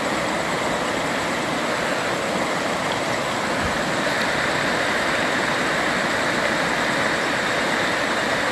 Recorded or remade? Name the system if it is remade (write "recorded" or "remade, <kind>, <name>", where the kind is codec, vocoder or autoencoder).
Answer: recorded